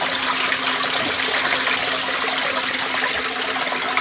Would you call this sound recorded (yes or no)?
yes